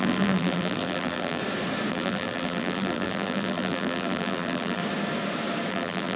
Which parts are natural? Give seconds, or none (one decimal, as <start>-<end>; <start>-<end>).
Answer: 1.4-1.9; 4.8-5.7